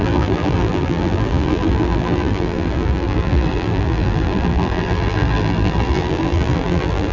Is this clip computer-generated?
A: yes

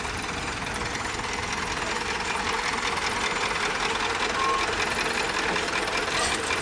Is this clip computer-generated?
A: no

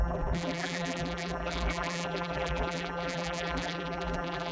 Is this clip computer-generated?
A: yes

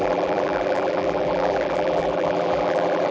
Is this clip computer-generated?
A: yes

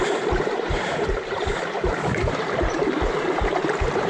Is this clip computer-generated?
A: yes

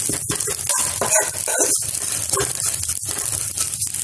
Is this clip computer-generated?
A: no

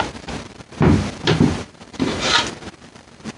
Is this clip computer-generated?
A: yes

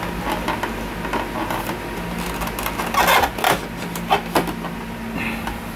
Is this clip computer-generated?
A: no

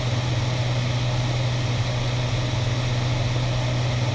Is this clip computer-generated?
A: no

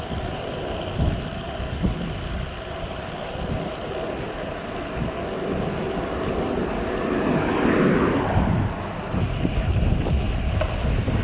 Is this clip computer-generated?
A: no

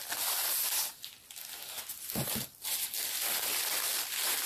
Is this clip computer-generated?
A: no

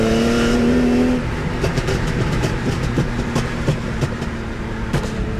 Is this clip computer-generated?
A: yes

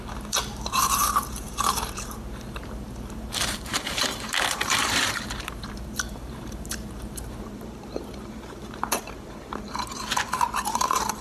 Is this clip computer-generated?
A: yes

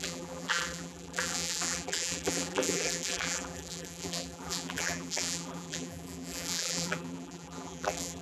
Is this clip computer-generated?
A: yes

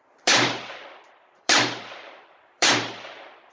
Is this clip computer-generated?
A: yes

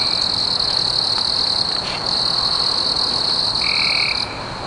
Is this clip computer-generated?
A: no